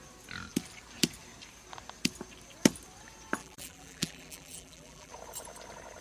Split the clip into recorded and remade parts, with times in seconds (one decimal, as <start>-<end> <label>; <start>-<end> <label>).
0.0-3.4 recorded; 3.4-5.1 remade; 5.1-6.0 recorded